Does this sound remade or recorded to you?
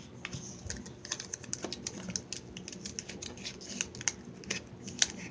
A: recorded